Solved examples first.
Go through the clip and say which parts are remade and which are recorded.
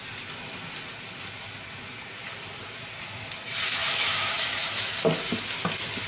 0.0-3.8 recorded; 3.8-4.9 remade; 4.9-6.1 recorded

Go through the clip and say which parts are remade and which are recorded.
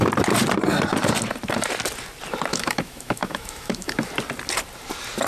0.0-2.5 recorded; 2.5-4.1 remade; 4.1-5.3 recorded